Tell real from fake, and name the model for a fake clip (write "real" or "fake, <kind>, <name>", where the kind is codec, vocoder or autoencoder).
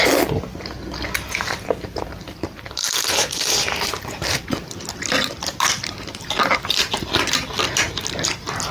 real